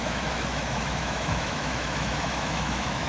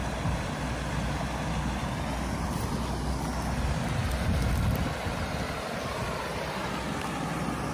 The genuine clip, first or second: second